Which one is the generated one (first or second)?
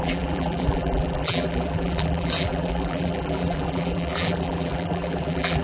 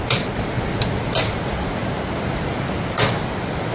first